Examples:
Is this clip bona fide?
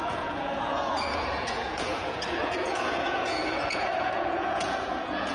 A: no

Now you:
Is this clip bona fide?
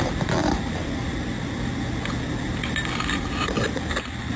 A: yes